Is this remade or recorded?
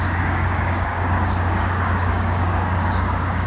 remade